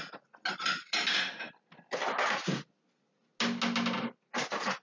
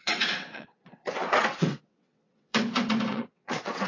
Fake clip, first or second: second